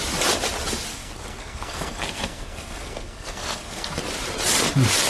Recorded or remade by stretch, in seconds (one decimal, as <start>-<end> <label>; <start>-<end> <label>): 0.0-0.9 recorded; 0.9-4.0 remade; 4.0-5.1 recorded